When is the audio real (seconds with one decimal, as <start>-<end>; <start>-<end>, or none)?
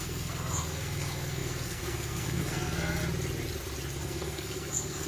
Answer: 3.0-4.0